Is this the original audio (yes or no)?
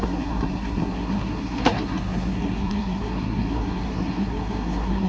no